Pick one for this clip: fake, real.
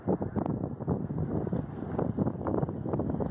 fake